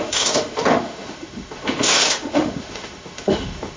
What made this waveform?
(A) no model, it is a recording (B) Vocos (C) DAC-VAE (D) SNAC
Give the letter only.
C